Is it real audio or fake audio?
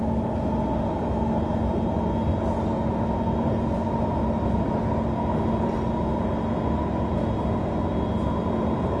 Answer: real